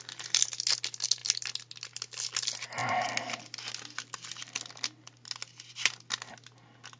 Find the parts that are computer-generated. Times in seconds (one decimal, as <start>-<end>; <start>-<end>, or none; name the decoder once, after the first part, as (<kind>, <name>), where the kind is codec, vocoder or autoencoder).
none